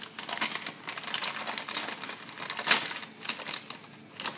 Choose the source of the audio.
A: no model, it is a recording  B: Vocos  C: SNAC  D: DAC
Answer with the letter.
A